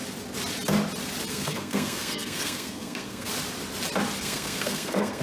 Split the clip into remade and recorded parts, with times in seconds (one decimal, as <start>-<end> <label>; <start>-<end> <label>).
0.0-1.3 recorded; 1.3-3.3 remade; 3.3-4.2 recorded; 4.2-5.2 remade